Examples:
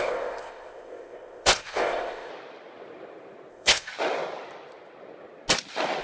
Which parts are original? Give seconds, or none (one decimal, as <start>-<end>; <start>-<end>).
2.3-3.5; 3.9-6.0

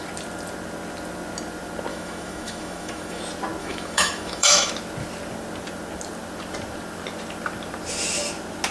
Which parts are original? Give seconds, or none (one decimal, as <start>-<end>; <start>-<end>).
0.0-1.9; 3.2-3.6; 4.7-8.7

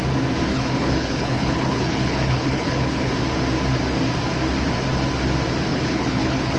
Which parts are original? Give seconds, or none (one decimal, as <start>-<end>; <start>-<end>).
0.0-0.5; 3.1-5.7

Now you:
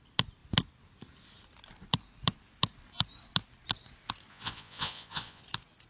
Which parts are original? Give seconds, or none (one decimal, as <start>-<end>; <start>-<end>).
0.0-4.3; 5.4-5.9

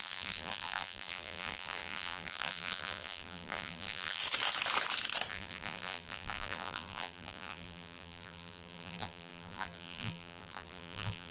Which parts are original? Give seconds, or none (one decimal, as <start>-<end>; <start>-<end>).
4.2-5.3